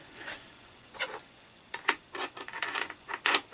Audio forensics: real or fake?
fake